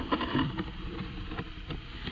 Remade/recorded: remade